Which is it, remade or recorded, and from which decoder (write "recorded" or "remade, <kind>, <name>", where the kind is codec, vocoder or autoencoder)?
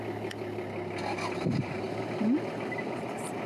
recorded